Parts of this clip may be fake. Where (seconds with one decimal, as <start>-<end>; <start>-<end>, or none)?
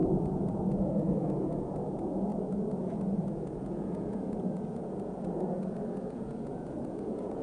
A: 0.0-7.4